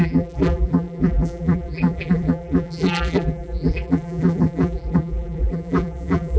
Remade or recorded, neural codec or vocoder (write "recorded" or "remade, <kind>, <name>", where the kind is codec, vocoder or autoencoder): remade, vocoder, BigVGAN v2